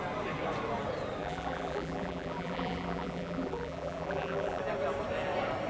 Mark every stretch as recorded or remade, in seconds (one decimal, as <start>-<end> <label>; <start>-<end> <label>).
0.0-1.2 recorded; 1.2-4.6 remade; 4.6-5.7 recorded